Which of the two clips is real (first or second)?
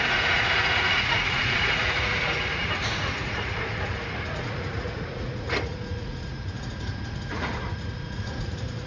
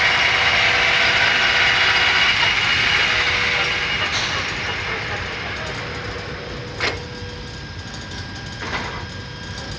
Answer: second